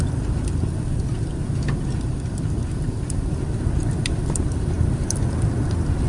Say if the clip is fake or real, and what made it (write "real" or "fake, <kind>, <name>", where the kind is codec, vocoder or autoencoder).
real